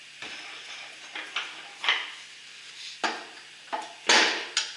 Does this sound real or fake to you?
real